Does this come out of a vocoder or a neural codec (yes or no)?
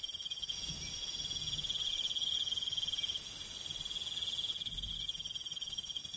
no